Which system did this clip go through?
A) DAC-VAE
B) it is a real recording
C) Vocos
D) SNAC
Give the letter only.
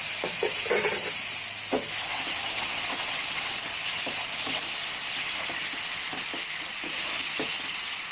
B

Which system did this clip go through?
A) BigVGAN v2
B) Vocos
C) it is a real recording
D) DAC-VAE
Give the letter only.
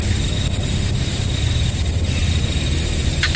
C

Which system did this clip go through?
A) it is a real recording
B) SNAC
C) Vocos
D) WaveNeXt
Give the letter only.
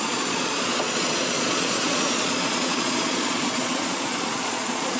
C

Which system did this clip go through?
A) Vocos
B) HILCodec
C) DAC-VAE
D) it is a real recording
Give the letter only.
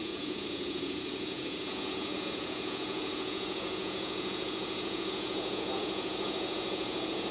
A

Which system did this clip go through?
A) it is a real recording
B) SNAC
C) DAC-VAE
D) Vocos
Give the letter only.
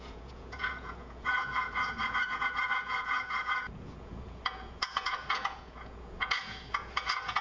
D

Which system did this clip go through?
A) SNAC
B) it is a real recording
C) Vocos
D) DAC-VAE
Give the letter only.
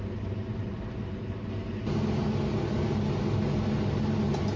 B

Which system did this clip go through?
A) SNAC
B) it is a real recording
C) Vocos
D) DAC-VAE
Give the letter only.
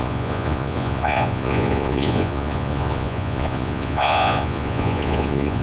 C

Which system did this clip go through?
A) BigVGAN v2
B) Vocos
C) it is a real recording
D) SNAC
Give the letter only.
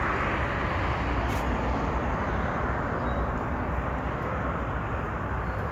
C